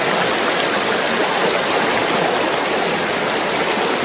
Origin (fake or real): real